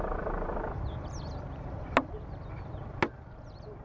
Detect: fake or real real